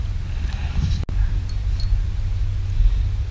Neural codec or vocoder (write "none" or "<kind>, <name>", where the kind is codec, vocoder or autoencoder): none